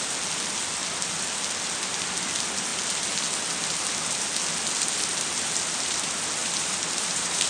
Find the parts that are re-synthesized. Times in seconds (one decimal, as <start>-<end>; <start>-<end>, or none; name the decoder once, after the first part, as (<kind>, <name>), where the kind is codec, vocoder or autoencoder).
6.4-7.5 (vocoder, BigVGAN v2)